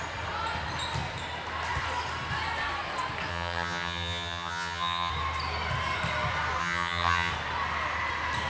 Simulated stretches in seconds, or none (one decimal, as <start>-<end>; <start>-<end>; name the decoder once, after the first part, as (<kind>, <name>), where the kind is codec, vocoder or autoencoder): 3.3-5.1 (vocoder, HiFi-GAN); 6.6-7.3